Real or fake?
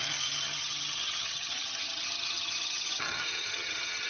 fake